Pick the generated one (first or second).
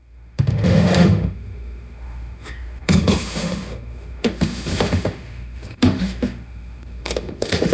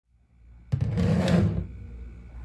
first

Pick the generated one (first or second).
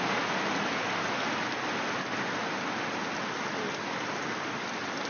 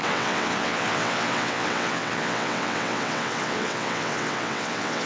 second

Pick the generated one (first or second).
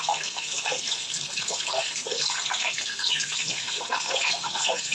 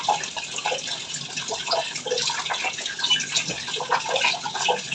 first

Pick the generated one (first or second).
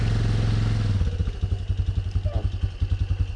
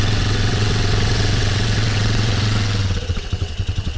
second